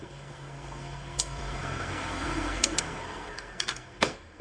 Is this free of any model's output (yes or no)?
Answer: no